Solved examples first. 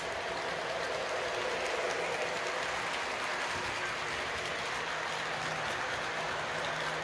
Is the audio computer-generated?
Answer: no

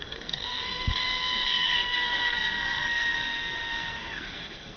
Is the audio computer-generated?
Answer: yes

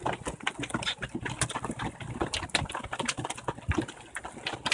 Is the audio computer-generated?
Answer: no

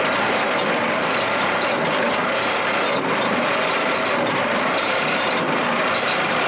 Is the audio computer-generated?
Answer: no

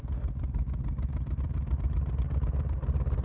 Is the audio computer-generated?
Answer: no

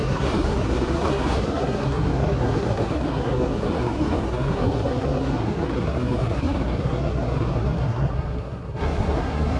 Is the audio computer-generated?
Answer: yes